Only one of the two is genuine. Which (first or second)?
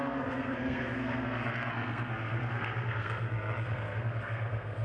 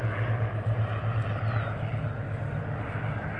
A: second